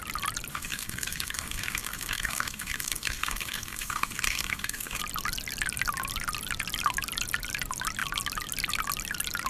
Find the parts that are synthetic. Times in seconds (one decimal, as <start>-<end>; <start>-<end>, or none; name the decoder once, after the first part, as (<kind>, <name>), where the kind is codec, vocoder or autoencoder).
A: 0.5-5.0 (codec, DAC)